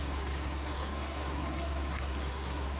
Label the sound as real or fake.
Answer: fake